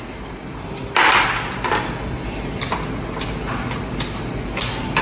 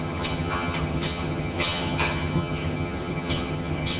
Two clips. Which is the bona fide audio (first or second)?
first